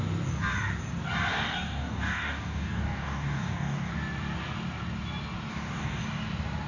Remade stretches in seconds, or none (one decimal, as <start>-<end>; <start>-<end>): 1.3-3.9; 5.5-6.0